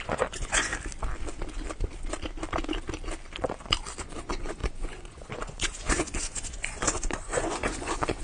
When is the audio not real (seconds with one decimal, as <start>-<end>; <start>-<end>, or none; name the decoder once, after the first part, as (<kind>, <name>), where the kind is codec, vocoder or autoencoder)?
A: 0.0-0.7 (vocoder, Vocos); 4.0-8.2